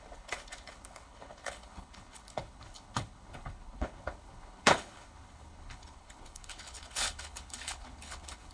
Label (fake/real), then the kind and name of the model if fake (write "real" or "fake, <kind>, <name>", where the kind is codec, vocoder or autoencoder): fake, codec, HILCodec